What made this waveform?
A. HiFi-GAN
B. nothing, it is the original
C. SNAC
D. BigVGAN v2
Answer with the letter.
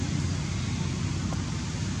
B